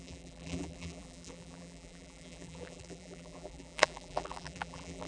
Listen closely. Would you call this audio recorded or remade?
remade